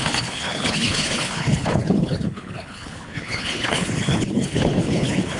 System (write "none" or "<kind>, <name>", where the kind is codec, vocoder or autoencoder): codec, HILCodec